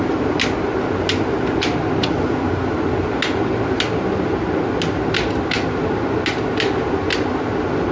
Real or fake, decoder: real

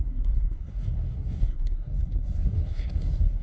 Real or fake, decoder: fake, codec, SNAC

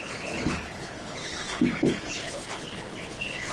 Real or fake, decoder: fake, codec, HILCodec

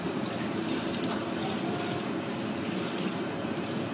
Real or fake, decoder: real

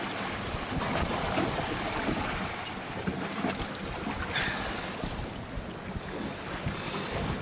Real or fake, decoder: real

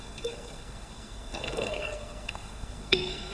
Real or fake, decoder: fake, codec, SNAC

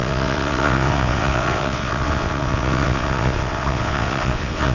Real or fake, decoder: fake, vocoder, WaveNeXt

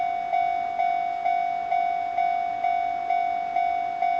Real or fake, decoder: real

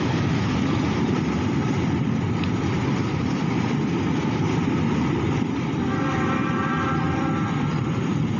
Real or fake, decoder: fake, vocoder, BigVGAN v2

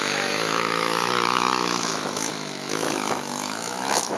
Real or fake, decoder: fake, autoencoder, DAC-VAE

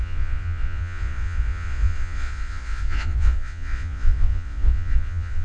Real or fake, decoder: fake, vocoder, Vocos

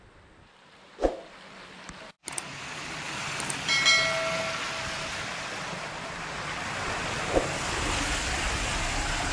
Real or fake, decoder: real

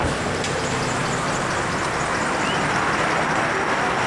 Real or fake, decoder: real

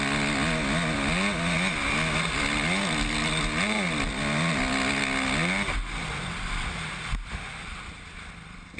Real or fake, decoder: real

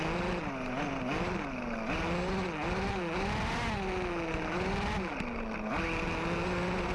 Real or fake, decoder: real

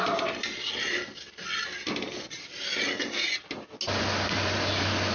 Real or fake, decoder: real